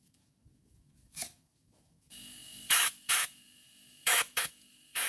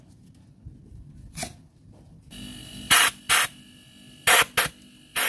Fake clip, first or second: first